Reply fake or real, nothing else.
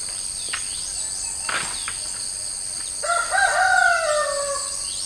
real